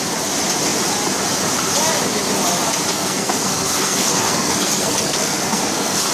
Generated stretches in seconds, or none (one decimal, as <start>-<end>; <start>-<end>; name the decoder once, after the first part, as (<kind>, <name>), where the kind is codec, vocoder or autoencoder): 2.9-6.1 (codec, SNAC)

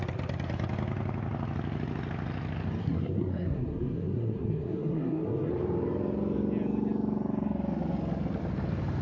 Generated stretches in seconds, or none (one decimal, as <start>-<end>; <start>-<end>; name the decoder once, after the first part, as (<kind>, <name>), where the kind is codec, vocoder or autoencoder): 2.8-5.5 (codec, SNAC)

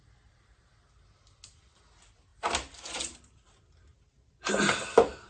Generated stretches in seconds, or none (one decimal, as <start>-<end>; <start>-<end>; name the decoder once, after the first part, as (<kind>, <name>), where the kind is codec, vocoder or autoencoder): none

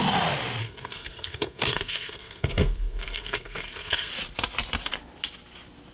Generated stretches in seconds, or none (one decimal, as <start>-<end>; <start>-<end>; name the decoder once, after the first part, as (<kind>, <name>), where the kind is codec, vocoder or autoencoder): 0.6-4.1 (codec, SNAC)

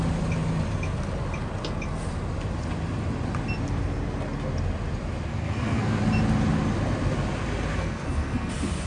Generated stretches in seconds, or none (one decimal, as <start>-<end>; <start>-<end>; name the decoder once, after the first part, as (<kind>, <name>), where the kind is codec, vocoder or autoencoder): 5.3-6.0 (codec, SNAC); 7.7-8.5

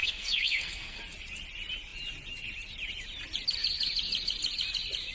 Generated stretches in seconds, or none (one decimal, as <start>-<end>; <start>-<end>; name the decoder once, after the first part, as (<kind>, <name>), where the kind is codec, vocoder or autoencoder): 0.0-1.0 (codec, SNAC)

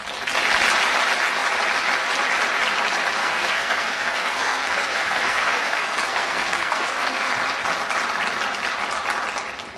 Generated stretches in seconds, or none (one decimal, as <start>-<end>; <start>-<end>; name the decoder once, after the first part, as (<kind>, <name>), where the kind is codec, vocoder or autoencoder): 3.2-7.3 (codec, SNAC)

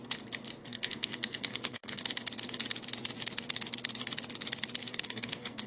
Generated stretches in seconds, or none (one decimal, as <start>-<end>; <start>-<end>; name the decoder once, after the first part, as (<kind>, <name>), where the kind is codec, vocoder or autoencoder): 0.6-2.0 (codec, SNAC); 4.8-5.7